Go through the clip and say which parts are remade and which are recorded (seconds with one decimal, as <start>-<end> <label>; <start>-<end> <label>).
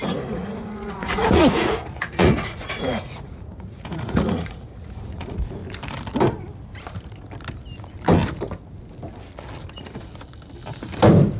0.0-5.6 remade; 5.6-9.7 recorded; 9.7-10.1 remade; 10.1-11.4 recorded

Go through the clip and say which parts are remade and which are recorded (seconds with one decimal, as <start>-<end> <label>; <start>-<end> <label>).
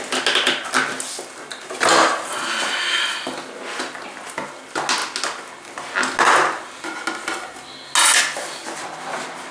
0.0-9.5 recorded